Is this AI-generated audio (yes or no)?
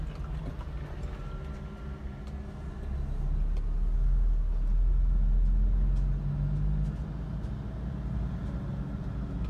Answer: no